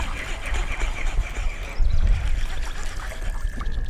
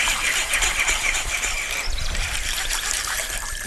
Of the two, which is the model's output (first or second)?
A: second